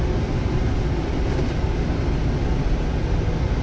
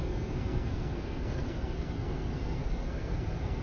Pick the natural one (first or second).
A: first